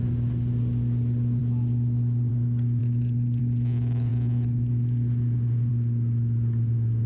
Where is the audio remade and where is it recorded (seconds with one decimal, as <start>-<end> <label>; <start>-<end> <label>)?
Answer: 0.0-7.1 recorded